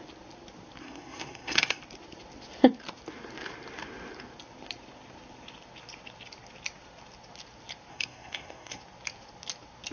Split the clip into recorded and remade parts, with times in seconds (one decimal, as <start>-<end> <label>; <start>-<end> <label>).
0.0-0.8 recorded; 0.8-1.8 remade; 1.8-7.9 recorded; 7.9-8.8 remade; 8.8-9.9 recorded